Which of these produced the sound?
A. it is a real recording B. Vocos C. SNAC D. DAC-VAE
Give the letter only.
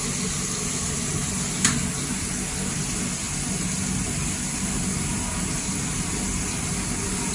A